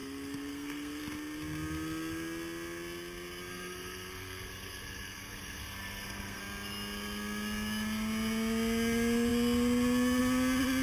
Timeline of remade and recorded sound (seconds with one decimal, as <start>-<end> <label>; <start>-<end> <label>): 0.0-1.0 remade; 1.0-3.5 recorded; 3.5-6.4 remade; 6.4-10.8 recorded